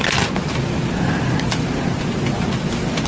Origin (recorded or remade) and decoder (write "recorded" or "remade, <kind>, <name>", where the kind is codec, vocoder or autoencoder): recorded